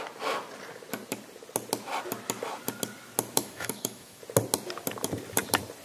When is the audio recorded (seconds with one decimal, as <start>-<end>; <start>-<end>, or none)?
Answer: 0.0-3.4; 4.2-5.8